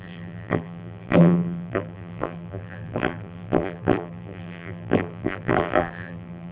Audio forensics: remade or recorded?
remade